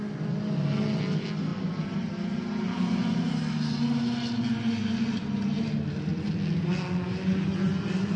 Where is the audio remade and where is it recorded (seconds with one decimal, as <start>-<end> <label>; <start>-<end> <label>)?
0.0-8.2 recorded